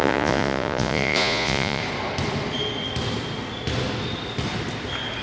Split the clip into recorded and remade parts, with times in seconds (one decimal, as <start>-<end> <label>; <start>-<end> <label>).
0.0-1.8 remade; 1.8-5.2 recorded